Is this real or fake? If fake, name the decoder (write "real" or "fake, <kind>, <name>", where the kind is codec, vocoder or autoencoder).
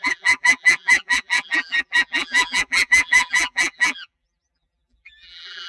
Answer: fake, vocoder, BigVGAN v2